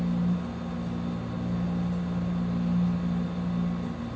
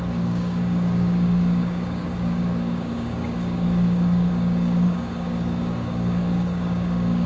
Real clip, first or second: first